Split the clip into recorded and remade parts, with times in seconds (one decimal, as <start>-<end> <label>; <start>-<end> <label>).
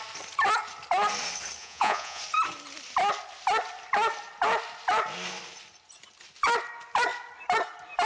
0.0-1.6 recorded; 1.6-2.2 remade; 2.2-8.1 recorded